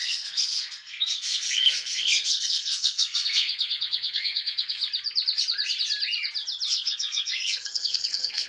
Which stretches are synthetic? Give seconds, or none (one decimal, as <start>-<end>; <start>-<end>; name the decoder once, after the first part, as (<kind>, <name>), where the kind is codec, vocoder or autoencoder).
0.0-4.8 (codec, SNAC); 6.7-8.5